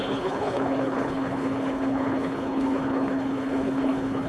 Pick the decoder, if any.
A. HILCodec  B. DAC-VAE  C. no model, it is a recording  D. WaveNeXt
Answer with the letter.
A